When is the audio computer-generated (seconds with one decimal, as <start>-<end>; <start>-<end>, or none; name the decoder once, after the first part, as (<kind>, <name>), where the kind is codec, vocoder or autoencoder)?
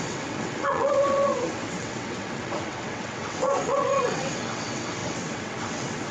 0.0-6.1 (vocoder, WaveNeXt)